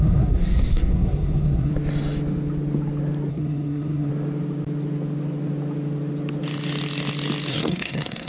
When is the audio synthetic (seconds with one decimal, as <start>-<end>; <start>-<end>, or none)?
0.0-1.7; 3.3-4.1; 7.5-8.3